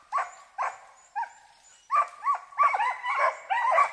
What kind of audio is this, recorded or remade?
recorded